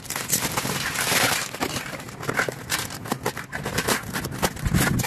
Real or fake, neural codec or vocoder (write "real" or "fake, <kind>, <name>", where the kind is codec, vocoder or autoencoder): real